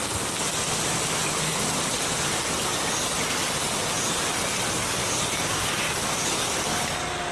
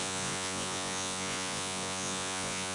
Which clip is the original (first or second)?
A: first